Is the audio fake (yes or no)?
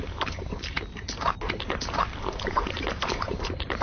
yes